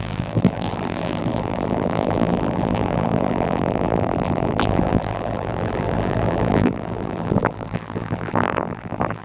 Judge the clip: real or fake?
fake